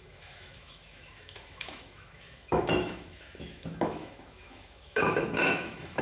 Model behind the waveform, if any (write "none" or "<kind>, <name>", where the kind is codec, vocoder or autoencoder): autoencoder, DAC-VAE